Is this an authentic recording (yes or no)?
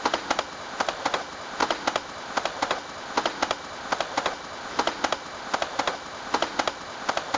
yes